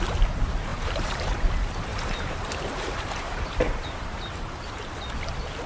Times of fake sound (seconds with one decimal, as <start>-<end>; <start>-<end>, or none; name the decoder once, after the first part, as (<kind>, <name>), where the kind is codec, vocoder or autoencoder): 0.7-1.5 (vocoder, BigVGAN v2); 1.9-4.7

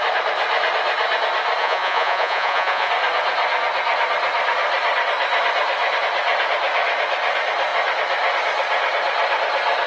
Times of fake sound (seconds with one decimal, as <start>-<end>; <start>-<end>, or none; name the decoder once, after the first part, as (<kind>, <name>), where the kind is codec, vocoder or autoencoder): 1.6-2.9 (vocoder, Vocos)